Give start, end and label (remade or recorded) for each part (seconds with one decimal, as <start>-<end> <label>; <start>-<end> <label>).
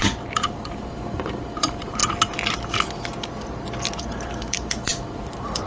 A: 0.0-2.0 remade; 2.0-4.0 recorded; 4.0-5.7 remade